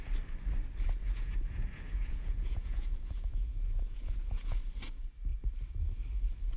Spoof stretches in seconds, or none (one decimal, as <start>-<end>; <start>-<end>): 1.0-4.5